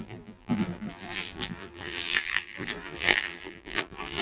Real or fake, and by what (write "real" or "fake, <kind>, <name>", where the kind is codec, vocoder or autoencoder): fake, vocoder, BigVGAN v2